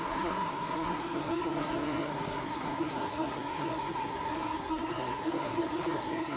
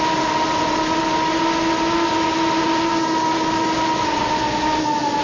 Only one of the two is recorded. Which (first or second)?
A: second